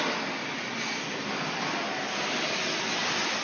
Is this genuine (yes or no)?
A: yes